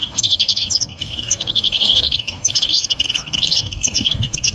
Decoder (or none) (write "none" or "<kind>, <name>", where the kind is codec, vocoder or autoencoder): codec, DAC